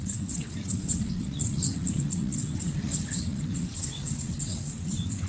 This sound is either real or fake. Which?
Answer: fake